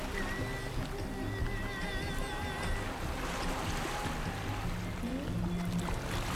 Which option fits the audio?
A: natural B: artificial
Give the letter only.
A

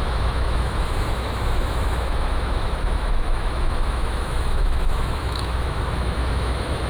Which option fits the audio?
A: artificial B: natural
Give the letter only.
A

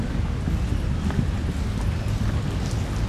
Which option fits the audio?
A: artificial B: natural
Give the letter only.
B